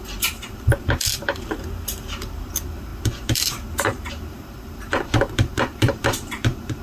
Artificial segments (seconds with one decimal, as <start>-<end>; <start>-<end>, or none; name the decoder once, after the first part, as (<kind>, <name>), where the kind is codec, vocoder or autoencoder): 0.0-6.8 (vocoder, BigVGAN v2)